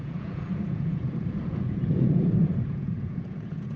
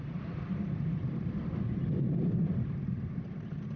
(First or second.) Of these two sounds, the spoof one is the first